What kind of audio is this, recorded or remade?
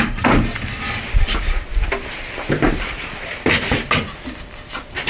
recorded